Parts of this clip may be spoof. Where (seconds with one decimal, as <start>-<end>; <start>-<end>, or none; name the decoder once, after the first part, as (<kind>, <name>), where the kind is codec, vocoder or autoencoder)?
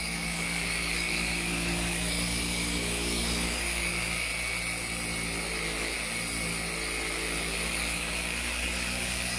0.0-4.3 (codec, DAC); 7.4-9.4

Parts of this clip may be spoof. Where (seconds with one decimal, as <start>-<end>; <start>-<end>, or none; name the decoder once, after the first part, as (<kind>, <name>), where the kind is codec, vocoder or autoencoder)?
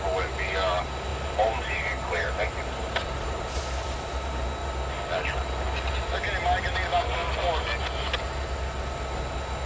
1.1-3.6 (vocoder, BigVGAN v2)